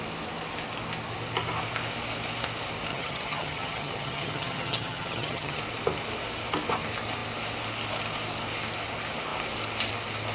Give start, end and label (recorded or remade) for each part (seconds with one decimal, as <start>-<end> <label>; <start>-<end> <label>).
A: 0.0-2.9 recorded; 2.9-5.6 remade; 5.6-10.3 recorded

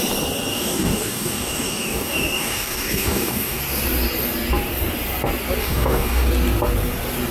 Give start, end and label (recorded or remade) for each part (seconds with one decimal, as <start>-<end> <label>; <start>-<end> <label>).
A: 0.0-0.5 recorded; 0.5-3.6 remade; 3.6-5.6 recorded; 5.6-6.3 remade; 6.3-7.3 recorded

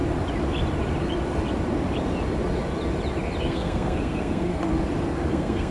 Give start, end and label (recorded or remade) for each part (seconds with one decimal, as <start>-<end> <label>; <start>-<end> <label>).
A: 0.0-3.4 recorded; 3.4-4.5 remade; 4.5-5.3 recorded; 5.3-5.7 remade

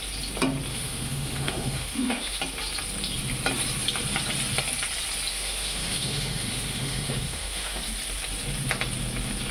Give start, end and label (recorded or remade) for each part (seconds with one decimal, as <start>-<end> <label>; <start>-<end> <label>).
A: 0.0-0.7 recorded; 0.7-2.4 remade; 2.4-5.3 recorded; 5.3-7.8 remade; 7.8-9.5 recorded